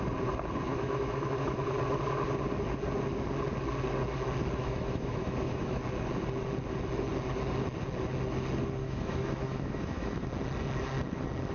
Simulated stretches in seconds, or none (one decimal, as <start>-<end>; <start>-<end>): 0.7-1.6; 4.6-5.8; 8.8-10.3